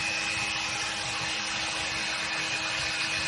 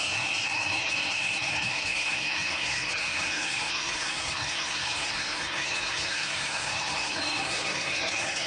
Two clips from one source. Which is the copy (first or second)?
second